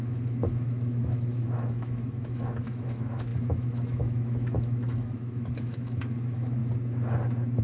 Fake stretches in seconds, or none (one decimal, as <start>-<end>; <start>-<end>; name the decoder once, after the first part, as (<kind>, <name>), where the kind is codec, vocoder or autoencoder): 0.0-6.6 (autoencoder, DAC-VAE)